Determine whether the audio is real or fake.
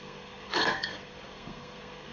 fake